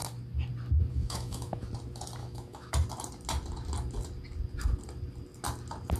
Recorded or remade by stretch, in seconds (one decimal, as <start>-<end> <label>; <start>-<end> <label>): 0.0-0.9 recorded; 0.9-1.7 remade; 1.7-2.2 recorded; 2.2-2.7 remade; 2.7-6.0 recorded